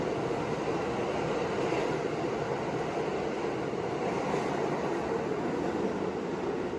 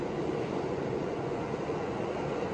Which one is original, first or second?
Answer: first